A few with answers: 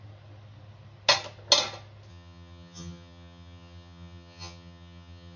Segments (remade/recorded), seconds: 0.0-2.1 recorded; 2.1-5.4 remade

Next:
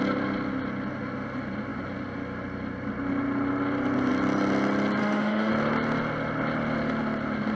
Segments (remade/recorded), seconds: 0.0-5.0 recorded; 5.0-5.5 remade; 5.5-7.5 recorded